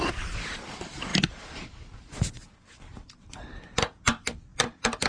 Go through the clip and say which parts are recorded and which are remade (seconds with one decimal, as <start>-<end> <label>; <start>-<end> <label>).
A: 0.0-5.1 recorded